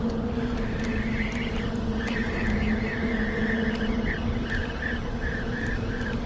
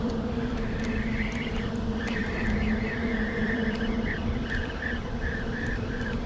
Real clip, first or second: first